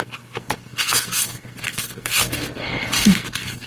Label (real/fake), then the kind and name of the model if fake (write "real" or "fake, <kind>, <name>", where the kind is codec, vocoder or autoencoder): fake, codec, SNAC